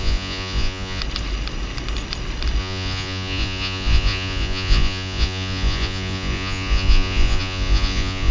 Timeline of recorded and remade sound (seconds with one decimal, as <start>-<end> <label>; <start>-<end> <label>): 0.0-1.0 remade; 1.0-2.6 recorded; 2.6-8.3 remade